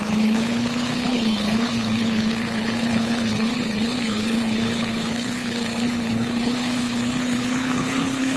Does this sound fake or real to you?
fake